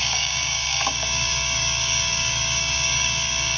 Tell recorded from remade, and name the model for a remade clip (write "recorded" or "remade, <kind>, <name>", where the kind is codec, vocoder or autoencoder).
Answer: remade, codec, DAC